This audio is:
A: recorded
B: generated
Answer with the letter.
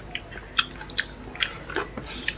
A